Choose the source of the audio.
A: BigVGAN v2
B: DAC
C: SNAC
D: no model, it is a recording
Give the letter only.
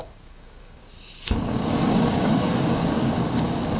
B